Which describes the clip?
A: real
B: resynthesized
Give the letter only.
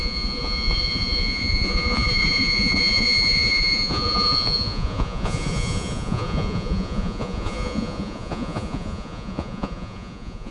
B